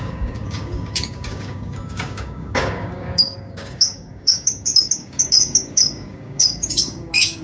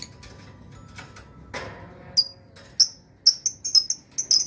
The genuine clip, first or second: second